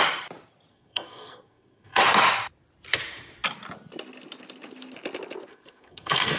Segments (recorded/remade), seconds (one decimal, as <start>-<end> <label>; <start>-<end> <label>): 0.0-0.7 recorded; 0.7-2.0 remade; 2.0-5.5 recorded; 5.5-6.4 remade